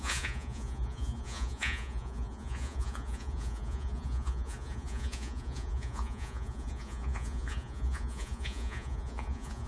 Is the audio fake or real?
fake